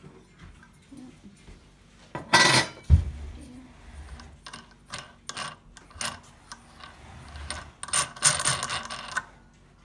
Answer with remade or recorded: recorded